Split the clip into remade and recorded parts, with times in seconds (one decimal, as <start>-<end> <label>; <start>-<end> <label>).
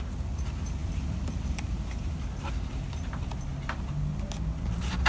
0.0-5.1 recorded